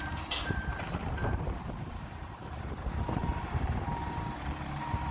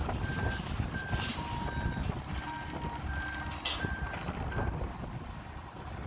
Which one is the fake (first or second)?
first